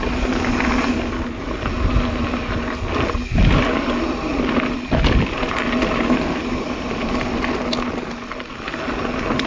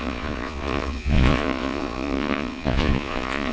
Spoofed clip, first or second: second